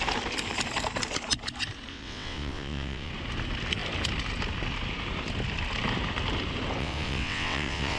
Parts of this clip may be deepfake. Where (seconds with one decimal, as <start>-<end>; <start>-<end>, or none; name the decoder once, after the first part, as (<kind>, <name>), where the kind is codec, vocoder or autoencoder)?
1.9-3.1 (vocoder, WaveNeXt); 6.8-8.0